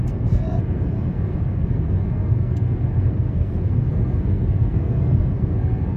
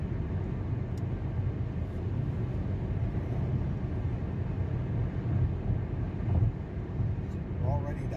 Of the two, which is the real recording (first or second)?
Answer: second